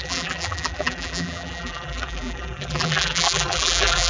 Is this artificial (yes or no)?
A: yes